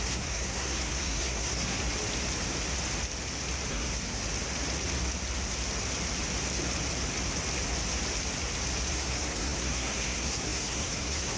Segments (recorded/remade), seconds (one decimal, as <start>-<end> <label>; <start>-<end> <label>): 0.0-1.8 remade; 1.8-3.7 recorded; 3.7-4.2 remade; 4.2-8.9 recorded; 8.9-11.4 remade